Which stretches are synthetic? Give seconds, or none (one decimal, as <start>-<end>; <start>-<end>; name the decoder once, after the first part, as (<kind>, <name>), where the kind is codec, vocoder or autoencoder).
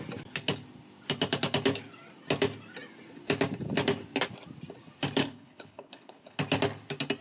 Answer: 5.2-6.4 (codec, HILCodec)